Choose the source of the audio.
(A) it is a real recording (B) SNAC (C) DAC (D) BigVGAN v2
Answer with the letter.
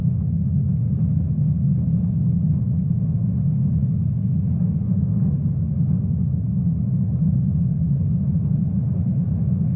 A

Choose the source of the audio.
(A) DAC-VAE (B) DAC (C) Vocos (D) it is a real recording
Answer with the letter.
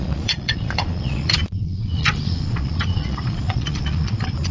C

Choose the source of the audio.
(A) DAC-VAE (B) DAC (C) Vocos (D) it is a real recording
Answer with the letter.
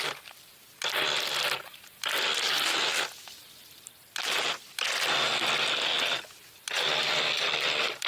D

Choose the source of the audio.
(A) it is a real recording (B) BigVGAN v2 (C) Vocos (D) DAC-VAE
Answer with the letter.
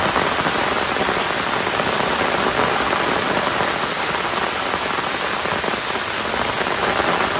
A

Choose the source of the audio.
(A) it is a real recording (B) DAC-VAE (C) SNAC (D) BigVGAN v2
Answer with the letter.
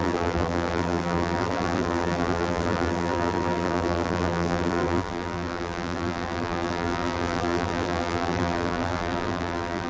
D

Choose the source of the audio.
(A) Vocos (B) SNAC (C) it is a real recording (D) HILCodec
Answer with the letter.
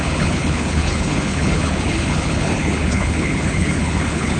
D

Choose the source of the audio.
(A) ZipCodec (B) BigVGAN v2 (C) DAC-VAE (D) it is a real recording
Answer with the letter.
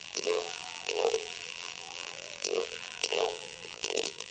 B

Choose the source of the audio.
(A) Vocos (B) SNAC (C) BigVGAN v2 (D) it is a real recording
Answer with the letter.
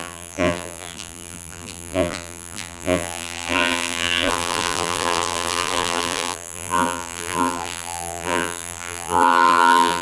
C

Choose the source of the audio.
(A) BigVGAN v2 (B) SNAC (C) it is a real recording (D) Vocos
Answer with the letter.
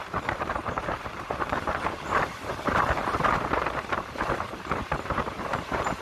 A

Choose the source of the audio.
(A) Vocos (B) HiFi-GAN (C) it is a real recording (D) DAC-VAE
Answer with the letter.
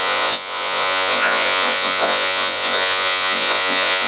A